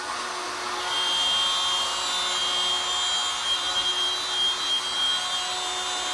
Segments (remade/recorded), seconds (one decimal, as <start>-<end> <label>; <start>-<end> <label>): 0.0-6.1 recorded